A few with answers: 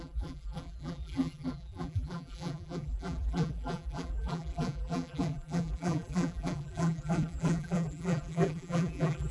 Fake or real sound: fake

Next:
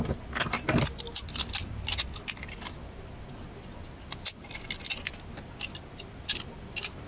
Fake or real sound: real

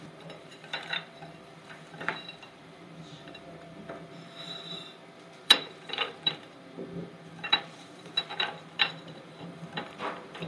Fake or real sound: fake